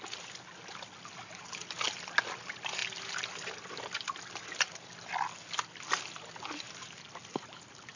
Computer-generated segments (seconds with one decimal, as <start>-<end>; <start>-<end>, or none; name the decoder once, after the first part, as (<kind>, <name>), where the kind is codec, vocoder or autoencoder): none